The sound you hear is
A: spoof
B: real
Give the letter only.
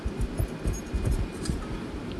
B